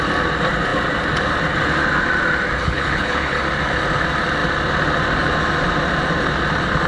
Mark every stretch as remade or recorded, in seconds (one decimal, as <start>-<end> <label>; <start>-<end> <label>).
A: 0.0-2.6 recorded; 2.6-3.4 remade; 3.4-6.9 recorded